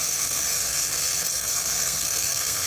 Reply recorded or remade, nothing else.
remade